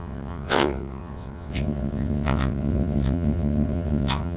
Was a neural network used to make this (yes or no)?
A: yes